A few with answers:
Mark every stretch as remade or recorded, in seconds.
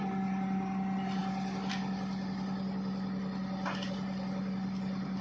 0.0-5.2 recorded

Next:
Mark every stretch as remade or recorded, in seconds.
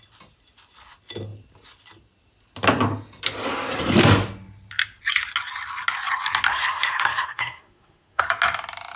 0.0-6.5 recorded; 6.5-8.2 remade; 8.2-9.0 recorded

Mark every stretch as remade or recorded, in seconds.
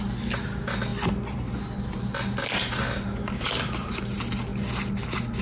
0.0-5.4 recorded